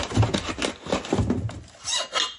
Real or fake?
real